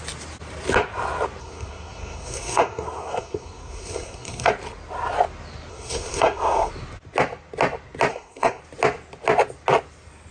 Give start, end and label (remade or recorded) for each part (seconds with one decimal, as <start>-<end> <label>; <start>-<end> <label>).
0.0-1.4 recorded; 1.4-4.5 remade; 4.5-5.7 recorded; 5.7-6.7 remade; 6.7-8.1 recorded; 8.1-8.6 remade; 8.6-10.3 recorded